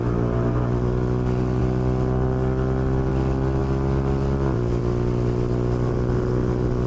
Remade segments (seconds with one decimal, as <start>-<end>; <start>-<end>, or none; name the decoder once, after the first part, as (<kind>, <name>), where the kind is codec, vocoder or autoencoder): none